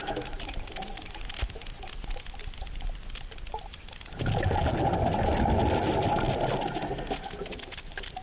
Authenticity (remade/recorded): recorded